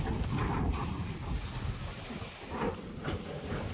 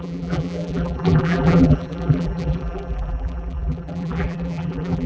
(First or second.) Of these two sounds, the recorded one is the first